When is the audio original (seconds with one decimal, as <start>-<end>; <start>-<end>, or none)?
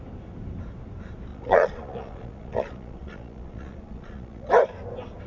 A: 0.0-1.3; 4.5-5.3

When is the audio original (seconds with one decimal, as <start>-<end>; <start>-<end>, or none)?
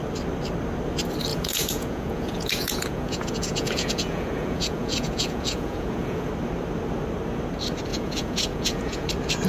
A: 0.0-1.3; 6.3-7.9; 9.1-9.5